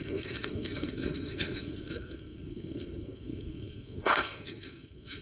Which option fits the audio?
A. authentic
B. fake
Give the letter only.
B